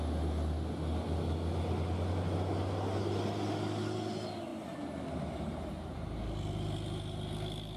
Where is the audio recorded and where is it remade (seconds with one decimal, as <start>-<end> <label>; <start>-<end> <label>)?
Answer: 0.0-7.8 recorded